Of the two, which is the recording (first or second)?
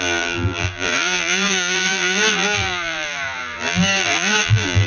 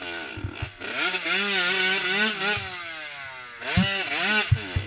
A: second